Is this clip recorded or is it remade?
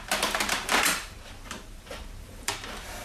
remade